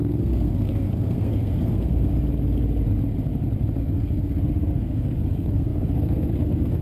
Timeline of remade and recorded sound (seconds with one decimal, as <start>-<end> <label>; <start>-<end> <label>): 0.0-2.1 remade; 2.1-3.8 recorded; 3.8-6.8 remade